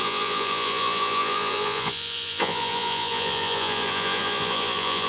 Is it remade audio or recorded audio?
remade